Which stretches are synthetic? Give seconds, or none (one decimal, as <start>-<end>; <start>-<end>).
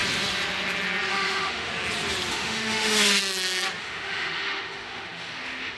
1.1-1.7; 2.3-3.2; 3.8-5.8